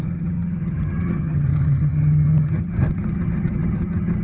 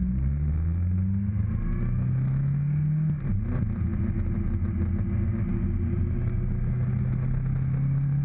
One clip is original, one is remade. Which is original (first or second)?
second